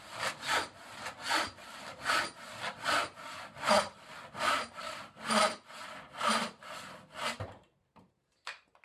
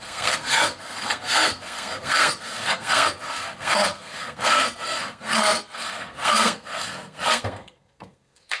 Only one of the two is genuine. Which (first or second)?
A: first